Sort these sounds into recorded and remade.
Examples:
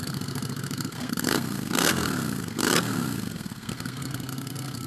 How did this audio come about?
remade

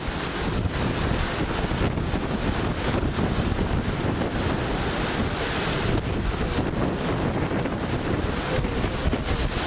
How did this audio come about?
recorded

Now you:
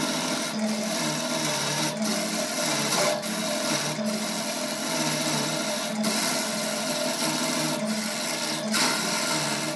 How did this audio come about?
recorded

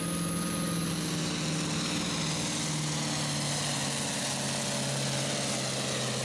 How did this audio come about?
recorded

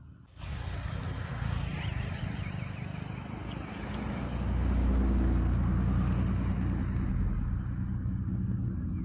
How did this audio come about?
recorded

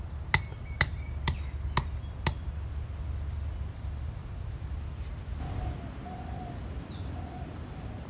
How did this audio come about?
recorded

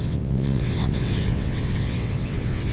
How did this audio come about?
remade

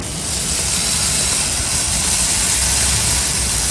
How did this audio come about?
recorded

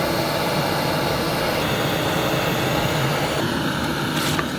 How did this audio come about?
recorded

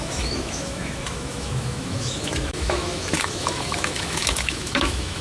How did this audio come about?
remade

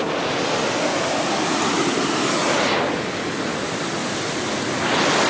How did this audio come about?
recorded